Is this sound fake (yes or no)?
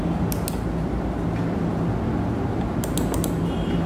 no